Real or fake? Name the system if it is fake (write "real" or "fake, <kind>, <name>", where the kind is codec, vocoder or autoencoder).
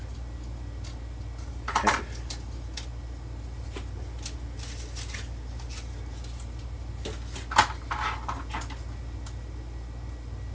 real